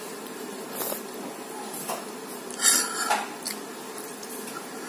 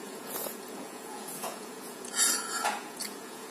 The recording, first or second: first